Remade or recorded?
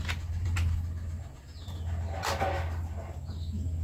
recorded